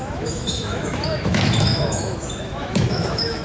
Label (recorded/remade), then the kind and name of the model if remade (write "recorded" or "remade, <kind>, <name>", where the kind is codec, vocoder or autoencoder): remade, autoencoder, DAC-VAE